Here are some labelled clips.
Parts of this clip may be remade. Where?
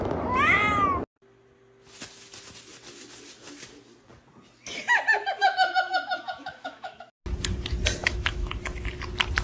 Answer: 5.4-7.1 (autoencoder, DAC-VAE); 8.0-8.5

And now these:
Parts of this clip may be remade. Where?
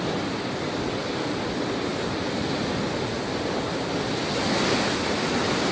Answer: 1.0-1.5 (vocoder, BigVGAN v2); 3.3-4.3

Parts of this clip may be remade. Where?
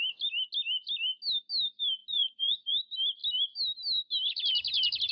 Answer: 2.0-2.7 (vocoder, BigVGAN v2)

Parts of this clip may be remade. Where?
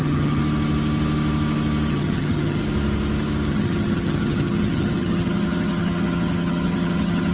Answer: 0.0-0.4 (vocoder, HiFi-GAN); 1.9-2.6; 3.5-7.3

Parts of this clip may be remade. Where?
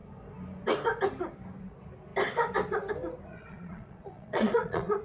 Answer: 3.3-5.0 (vocoder, Vocos)